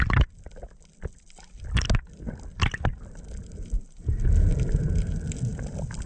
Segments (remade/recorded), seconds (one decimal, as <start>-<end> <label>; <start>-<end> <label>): 0.0-6.1 recorded